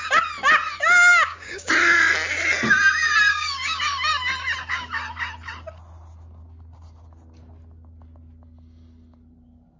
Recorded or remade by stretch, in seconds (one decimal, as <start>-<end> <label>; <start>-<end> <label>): 0.0-1.1 recorded; 1.1-1.7 remade; 1.7-3.3 recorded; 3.3-3.8 remade; 3.8-9.8 recorded